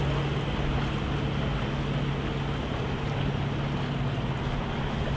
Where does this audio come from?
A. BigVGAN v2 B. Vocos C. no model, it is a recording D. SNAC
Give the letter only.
C